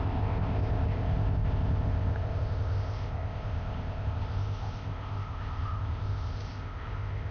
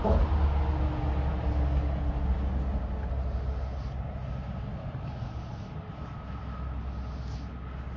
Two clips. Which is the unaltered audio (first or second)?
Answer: second